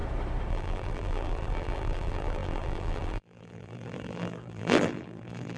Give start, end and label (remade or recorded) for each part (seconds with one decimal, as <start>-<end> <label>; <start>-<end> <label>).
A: 0.0-0.5 recorded; 0.5-5.6 remade